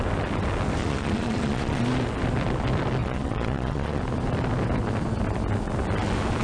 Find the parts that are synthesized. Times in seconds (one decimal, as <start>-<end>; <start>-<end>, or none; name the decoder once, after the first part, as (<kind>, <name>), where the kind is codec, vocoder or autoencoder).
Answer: 0.8-1.8 (vocoder, Vocos); 3.0-4.0